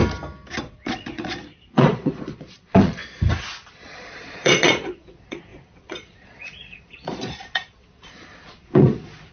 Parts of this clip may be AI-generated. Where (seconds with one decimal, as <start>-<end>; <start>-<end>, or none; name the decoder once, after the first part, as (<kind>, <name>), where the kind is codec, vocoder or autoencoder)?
0.6-3.0 (vocoder, Vocos); 3.7-9.3